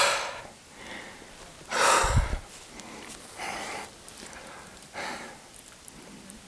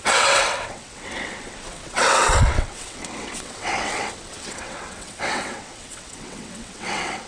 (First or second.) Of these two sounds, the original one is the first